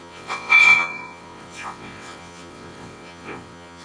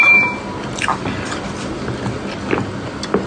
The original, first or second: second